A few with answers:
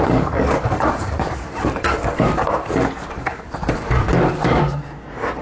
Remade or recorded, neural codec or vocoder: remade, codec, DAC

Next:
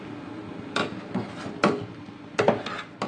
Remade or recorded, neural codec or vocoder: recorded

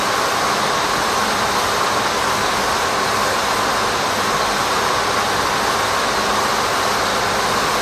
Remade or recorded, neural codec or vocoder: recorded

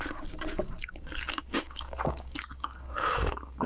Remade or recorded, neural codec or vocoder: remade, codec, DAC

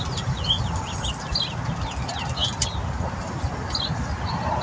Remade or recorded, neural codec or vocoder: recorded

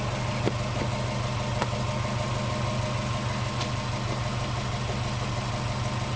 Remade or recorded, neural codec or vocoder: recorded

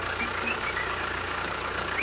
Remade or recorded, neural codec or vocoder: remade, codec, DAC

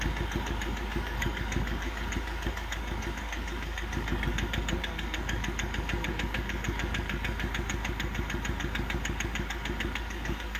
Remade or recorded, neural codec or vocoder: remade, codec, DAC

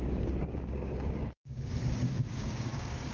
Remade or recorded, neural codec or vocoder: remade, codec, DAC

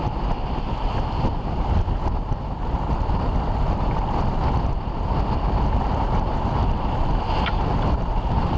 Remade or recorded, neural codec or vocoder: recorded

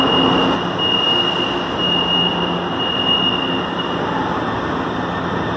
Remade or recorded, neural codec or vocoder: recorded